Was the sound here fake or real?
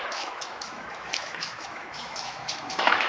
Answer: fake